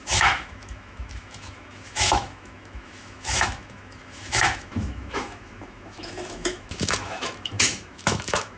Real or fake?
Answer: fake